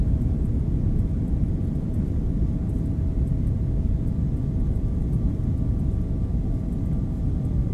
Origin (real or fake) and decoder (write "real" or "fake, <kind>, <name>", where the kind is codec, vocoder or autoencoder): real